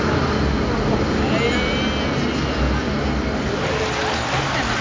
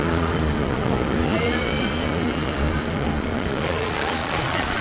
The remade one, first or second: second